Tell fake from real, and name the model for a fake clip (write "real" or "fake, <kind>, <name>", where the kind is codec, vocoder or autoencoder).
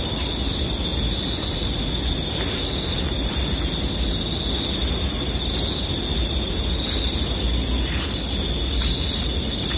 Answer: real